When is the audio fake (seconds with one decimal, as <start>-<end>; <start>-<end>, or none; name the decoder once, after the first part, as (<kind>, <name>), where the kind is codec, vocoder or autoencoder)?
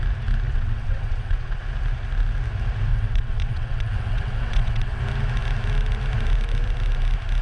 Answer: 0.5-1.6 (vocoder, WaveNeXt); 2.9-5.0